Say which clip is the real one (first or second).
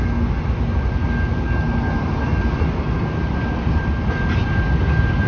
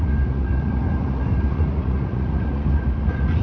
first